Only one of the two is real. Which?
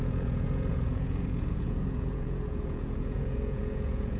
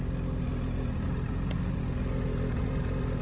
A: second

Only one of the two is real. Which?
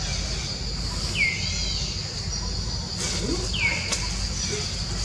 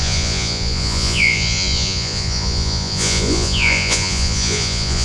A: first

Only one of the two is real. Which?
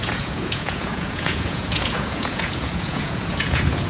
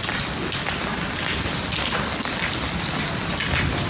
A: second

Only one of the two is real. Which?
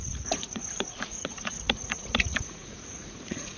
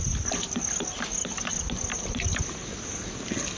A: second